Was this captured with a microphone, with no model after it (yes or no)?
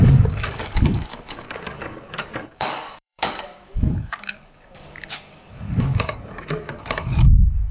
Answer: no